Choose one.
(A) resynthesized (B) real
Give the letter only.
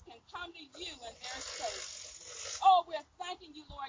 B